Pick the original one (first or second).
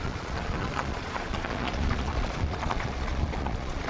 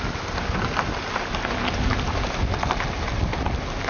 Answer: second